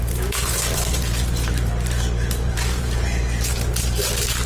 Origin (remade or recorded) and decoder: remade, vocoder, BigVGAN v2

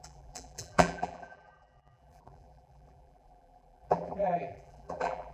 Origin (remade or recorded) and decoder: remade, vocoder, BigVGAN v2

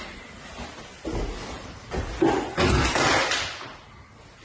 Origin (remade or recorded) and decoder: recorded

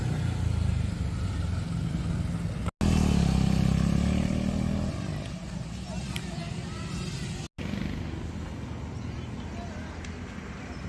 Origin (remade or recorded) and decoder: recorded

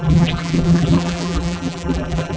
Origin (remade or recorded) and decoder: remade, vocoder, BigVGAN v2